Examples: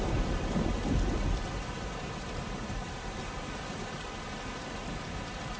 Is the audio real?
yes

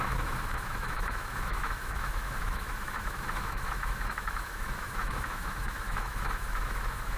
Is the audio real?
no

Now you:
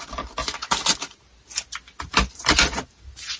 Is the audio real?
yes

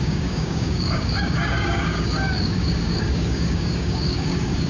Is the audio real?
no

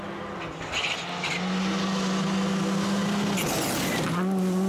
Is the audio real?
yes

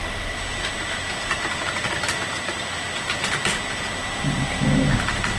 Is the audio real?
yes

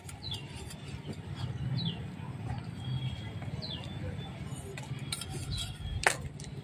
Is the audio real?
yes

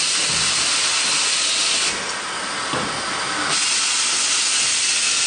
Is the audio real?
yes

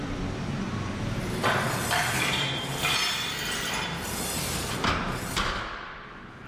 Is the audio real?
no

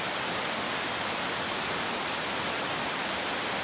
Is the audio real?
yes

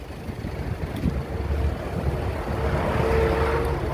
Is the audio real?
yes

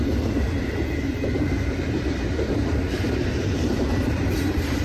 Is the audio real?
no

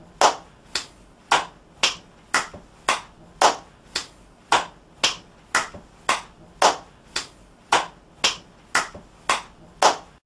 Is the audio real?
yes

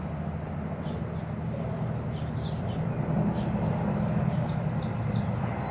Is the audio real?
yes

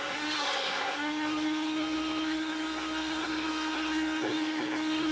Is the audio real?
no